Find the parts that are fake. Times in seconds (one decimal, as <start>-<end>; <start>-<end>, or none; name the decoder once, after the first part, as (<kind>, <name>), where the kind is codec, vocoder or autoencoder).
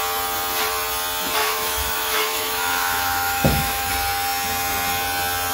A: 1.4-3.9 (autoencoder, DAC-VAE)